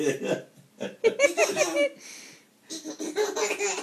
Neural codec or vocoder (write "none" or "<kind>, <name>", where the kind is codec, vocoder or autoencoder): none